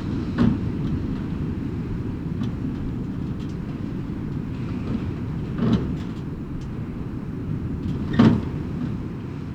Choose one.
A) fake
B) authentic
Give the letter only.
B